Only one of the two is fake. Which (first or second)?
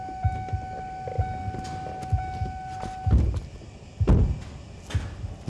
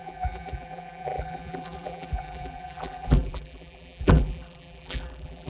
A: second